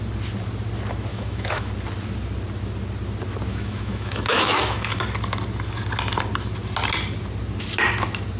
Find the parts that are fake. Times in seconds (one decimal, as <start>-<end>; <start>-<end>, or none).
1.1-1.7; 3.5-5.0